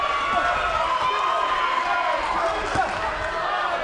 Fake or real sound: real